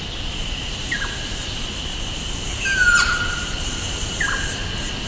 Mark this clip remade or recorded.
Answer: recorded